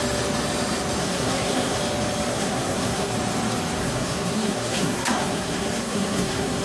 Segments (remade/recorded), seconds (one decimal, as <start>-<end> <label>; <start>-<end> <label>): 0.0-1.0 recorded; 1.0-1.8 remade; 1.8-2.3 recorded; 2.3-3.1 remade; 3.1-3.8 recorded; 3.8-6.6 remade